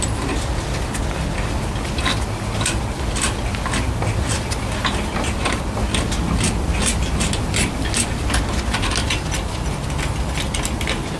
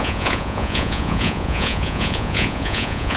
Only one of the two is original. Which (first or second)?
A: first